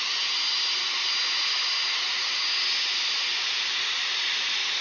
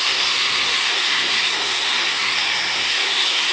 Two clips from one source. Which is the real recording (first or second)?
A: first